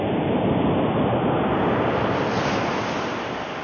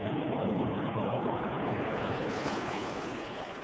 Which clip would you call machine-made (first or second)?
second